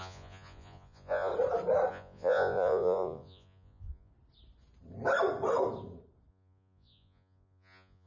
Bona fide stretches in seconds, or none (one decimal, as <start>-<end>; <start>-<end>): 1.3-1.9; 4.1-6.3